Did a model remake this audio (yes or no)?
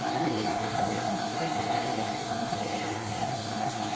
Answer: yes